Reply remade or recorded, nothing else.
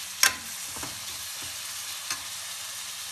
recorded